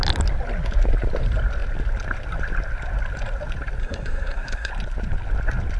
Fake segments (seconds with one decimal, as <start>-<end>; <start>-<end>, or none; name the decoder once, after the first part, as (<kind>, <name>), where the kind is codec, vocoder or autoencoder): 3.8-4.7 (codec, SNAC)

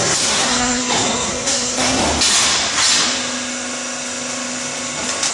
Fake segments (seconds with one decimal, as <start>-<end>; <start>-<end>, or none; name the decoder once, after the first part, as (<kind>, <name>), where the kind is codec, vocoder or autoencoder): 0.0-2.0 (codec, SNAC)

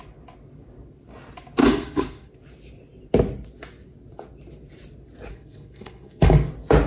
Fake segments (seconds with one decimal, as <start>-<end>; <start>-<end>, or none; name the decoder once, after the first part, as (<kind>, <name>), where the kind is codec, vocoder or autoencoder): 1.6-2.3 (codec, SNAC); 5.3-6.5

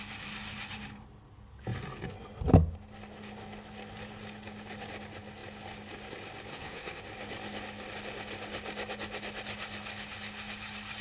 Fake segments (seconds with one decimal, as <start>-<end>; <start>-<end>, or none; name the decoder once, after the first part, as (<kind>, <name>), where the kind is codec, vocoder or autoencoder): 6.5-7.0 (codec, SNAC)

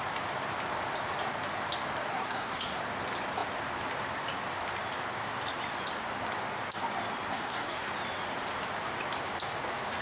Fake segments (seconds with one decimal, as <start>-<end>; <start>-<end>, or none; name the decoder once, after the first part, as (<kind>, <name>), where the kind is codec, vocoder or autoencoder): 2.1-2.8 (codec, SNAC); 7.3-7.9

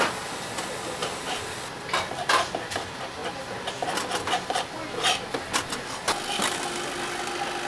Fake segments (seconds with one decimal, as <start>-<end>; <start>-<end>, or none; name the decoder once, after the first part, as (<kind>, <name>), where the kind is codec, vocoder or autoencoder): none